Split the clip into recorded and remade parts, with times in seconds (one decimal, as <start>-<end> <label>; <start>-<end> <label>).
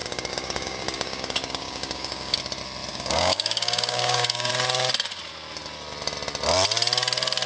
0.0-2.4 remade; 2.4-2.9 recorded; 2.9-4.5 remade; 4.5-7.5 recorded